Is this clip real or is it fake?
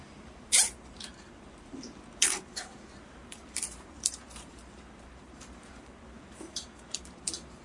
fake